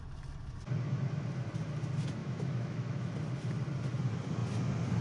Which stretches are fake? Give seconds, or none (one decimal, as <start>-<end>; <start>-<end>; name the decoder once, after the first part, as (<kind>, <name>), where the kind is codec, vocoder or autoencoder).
2.2-3.1 (autoencoder, DAC-VAE)